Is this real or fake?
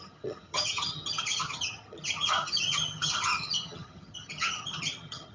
fake